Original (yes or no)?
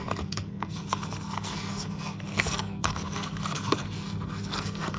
no